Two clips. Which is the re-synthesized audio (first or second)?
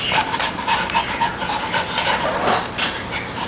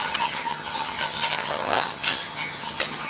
second